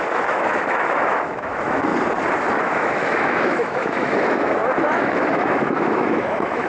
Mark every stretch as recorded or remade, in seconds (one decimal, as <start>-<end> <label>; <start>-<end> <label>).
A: 0.0-1.9 remade; 1.9-2.6 recorded; 2.6-6.7 remade